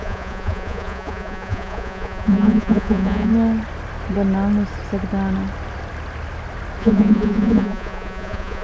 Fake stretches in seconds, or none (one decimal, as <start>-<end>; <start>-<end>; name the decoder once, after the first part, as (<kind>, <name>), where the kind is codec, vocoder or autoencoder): 0.0-3.3 (vocoder, Vocos); 6.8-8.6